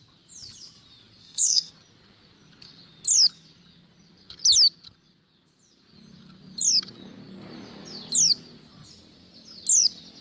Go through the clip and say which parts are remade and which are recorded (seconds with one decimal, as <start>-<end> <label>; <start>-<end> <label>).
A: 0.0-1.2 recorded; 1.2-1.7 remade; 1.7-10.2 recorded